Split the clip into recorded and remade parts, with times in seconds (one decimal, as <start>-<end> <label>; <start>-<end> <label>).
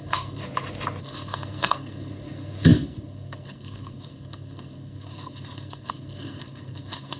0.0-0.4 remade; 0.4-1.0 recorded; 1.0-7.2 remade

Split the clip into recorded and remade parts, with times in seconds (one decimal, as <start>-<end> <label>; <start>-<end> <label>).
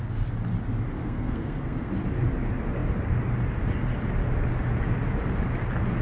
0.0-1.0 recorded; 1.0-1.9 remade; 1.9-6.0 recorded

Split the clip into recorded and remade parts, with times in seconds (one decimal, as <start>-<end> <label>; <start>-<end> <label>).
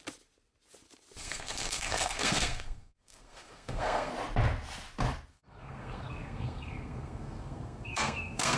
0.0-1.2 recorded; 1.2-4.1 remade; 4.1-5.3 recorded; 5.3-8.6 remade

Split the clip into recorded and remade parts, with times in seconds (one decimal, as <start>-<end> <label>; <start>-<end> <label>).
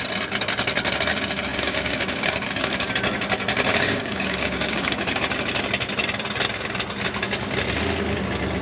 0.0-1.5 recorded; 1.5-2.9 remade; 2.9-3.7 recorded; 3.7-5.2 remade; 5.2-8.6 recorded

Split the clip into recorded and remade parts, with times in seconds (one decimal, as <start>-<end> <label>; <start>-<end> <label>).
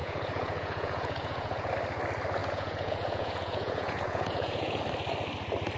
0.0-1.7 remade; 1.7-2.4 recorded; 2.4-4.8 remade; 4.8-5.8 recorded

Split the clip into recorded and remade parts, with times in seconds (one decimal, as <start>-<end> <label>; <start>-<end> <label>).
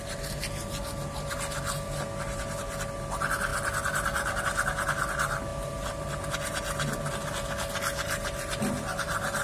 0.0-9.4 recorded